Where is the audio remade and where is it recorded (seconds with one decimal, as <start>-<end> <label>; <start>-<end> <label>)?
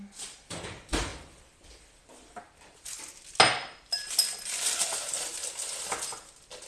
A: 0.0-1.1 recorded; 1.1-3.0 remade; 3.0-6.7 recorded